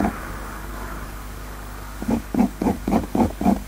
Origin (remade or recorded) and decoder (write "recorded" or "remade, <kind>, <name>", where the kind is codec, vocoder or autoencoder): remade, codec, DAC